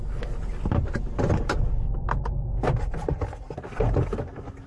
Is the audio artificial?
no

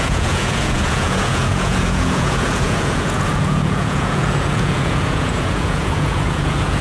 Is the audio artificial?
yes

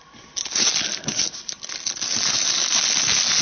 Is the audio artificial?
no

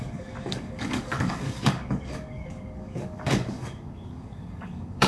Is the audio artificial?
yes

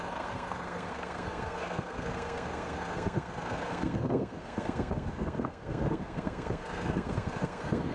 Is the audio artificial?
yes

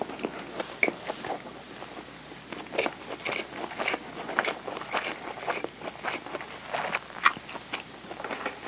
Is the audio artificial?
no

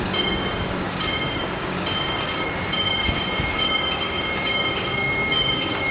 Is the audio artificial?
yes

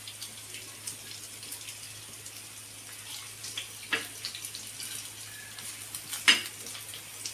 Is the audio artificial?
no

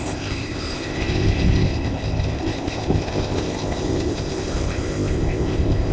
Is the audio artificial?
yes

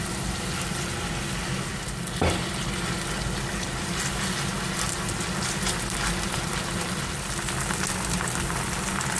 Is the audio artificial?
no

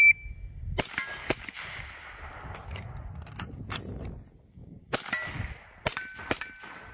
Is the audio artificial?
no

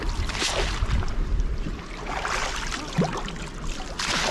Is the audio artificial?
no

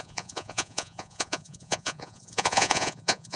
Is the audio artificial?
yes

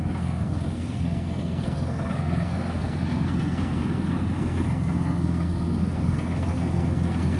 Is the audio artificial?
yes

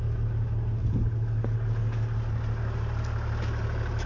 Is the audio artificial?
no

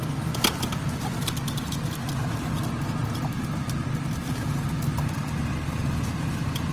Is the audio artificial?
no